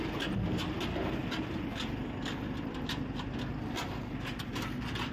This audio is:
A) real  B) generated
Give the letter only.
A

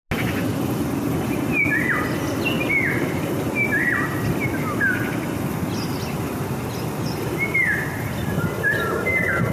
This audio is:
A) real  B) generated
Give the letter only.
A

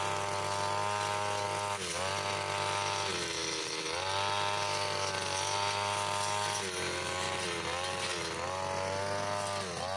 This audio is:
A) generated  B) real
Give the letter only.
B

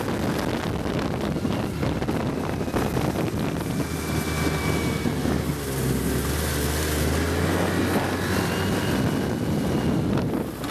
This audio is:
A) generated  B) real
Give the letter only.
B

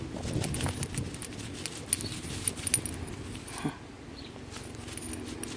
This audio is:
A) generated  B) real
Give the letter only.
B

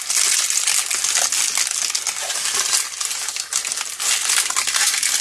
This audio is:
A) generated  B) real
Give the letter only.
B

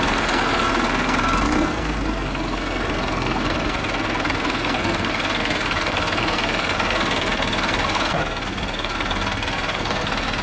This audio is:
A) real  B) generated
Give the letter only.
B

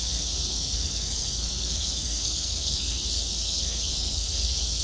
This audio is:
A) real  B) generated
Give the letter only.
B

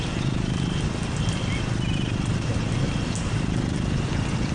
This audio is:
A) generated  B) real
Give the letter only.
B